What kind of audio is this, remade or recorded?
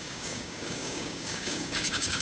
remade